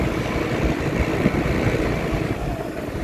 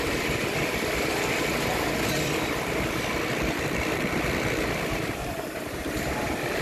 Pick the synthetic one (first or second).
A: second